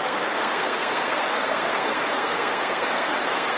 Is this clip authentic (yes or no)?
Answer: no